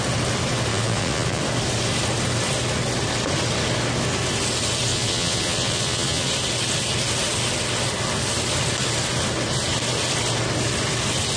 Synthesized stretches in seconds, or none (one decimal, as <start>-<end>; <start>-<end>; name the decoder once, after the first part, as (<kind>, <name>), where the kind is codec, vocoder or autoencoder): 0.7-1.4 (vocoder, Vocos); 4.9-6.3